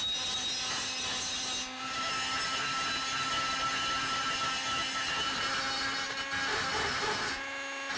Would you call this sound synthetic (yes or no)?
no